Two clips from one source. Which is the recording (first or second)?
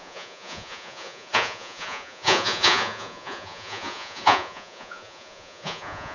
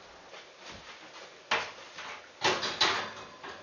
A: second